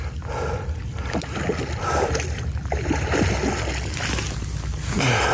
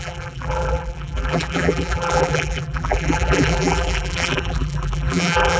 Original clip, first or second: first